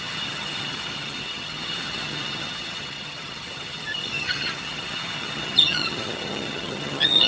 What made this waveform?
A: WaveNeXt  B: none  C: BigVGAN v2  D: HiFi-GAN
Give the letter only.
D